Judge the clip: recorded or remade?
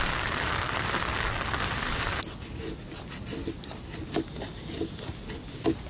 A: recorded